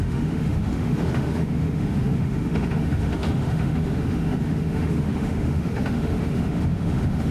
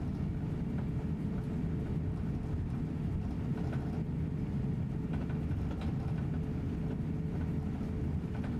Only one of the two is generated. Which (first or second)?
first